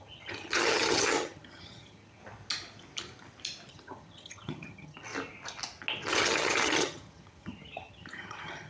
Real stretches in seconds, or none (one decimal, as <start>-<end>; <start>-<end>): 2.2-3.7; 5.1-6.1